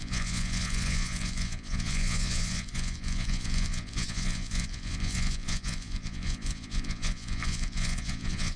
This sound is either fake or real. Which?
fake